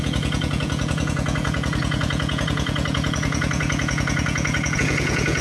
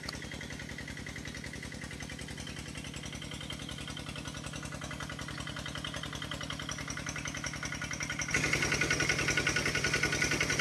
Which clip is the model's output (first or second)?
first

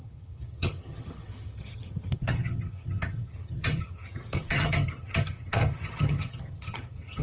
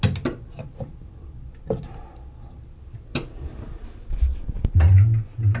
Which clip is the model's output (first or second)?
first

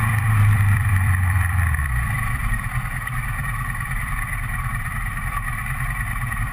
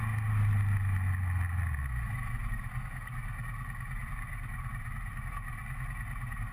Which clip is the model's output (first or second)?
first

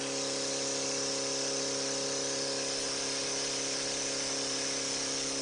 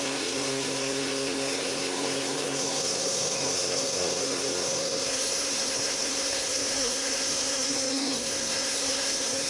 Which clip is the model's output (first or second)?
second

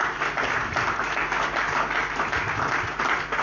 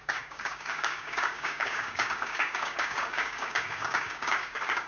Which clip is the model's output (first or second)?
second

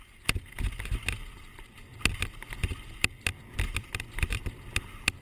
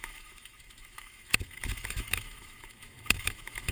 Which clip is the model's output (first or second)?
second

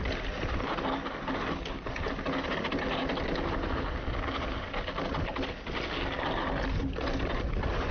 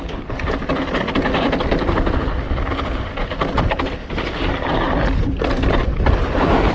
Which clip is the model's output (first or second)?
second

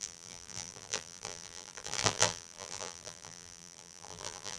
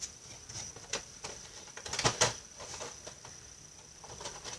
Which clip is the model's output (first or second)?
first